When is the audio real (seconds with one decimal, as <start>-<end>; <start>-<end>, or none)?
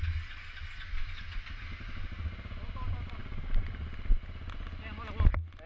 0.0-5.7